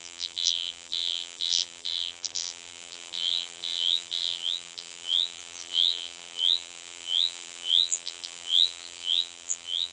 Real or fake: fake